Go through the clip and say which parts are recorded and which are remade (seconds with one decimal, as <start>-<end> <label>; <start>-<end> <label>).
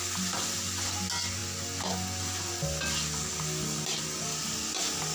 0.0-5.1 recorded